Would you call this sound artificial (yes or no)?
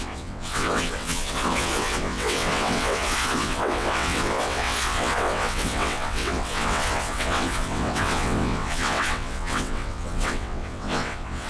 yes